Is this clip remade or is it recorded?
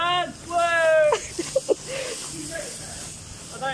recorded